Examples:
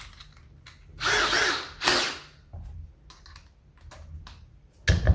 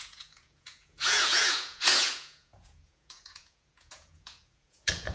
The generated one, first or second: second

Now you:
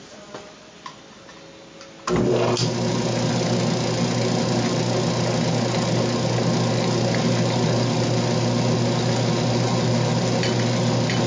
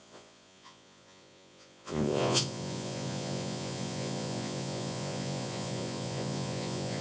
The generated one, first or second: second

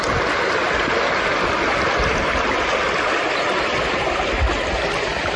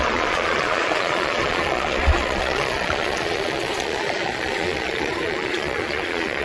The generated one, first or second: second